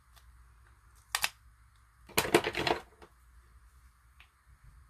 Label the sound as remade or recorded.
recorded